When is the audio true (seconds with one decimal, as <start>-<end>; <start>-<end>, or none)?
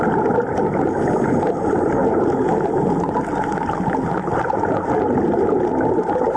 0.0-6.4